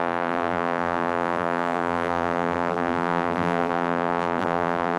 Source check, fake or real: fake